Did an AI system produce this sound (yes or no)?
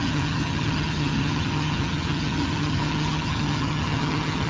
yes